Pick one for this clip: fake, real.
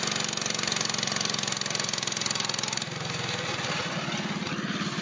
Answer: real